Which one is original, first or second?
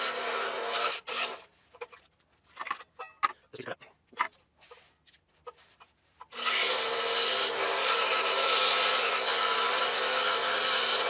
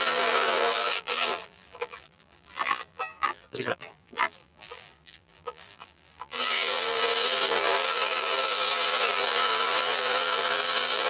first